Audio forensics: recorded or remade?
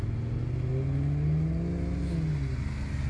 recorded